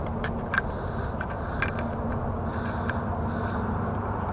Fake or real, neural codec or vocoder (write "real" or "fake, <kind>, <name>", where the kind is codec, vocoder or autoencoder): real